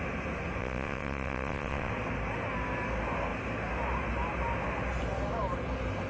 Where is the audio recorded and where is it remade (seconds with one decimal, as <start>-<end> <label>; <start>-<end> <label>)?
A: 0.0-0.6 recorded; 0.6-1.9 remade; 1.9-6.1 recorded